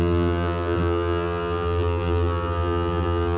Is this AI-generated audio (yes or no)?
yes